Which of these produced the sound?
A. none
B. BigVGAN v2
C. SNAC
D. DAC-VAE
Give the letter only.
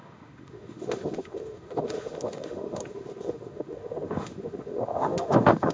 D